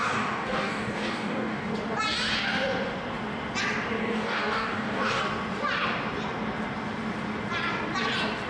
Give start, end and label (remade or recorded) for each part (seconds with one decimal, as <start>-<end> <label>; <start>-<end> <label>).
0.0-1.7 remade; 1.7-4.0 recorded; 4.0-5.2 remade; 5.2-8.5 recorded